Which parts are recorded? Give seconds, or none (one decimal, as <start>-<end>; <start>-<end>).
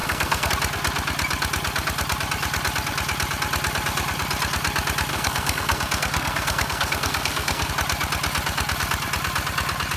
0.5-5.1; 7.7-10.0